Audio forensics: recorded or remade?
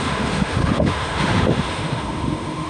remade